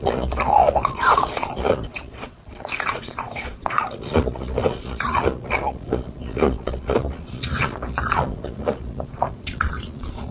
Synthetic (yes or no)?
yes